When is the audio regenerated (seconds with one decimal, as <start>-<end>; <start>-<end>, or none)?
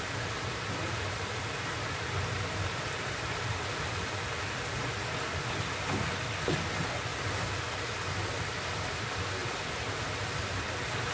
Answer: 7.1-7.6